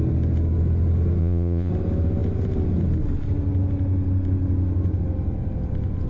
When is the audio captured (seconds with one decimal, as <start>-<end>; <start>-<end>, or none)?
0.0-1.2; 1.7-6.1